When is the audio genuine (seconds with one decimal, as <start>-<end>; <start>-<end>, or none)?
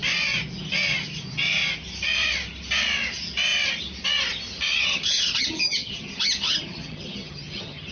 0.0-4.9